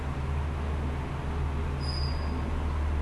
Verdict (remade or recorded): recorded